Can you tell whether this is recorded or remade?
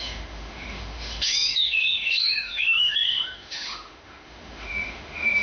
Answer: remade